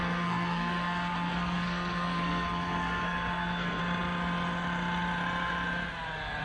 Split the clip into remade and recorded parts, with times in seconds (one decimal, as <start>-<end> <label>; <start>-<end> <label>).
0.0-3.8 remade; 3.8-6.4 recorded